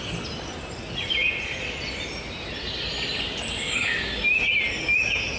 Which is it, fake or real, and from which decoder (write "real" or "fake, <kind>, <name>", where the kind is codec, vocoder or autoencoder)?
real